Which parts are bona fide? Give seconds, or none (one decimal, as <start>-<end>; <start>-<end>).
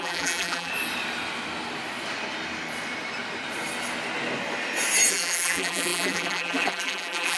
0.7-5.1